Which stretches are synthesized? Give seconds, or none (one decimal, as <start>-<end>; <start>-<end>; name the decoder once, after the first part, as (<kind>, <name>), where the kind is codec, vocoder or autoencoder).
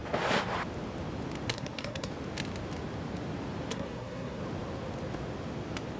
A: 1.5-2.1 (codec, SNAC); 3.7-4.4